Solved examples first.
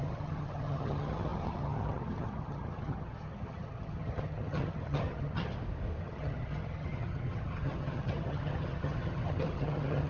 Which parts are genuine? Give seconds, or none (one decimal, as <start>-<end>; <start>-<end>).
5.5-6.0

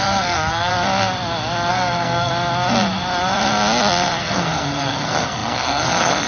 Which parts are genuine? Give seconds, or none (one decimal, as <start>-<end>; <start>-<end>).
0.7-1.7; 2.3-4.2

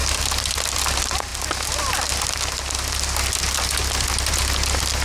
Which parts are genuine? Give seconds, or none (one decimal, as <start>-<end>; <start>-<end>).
0.0-5.0